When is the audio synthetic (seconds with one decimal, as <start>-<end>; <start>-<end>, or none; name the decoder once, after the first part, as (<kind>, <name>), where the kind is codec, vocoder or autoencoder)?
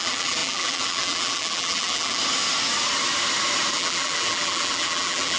0.0-2.2 (vocoder, BigVGAN v2); 3.7-5.4